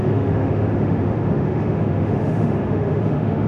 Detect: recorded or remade remade